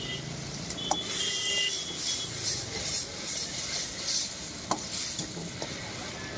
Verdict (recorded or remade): recorded